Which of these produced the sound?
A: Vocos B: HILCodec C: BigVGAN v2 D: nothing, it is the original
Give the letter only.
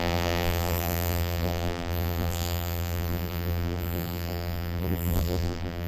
C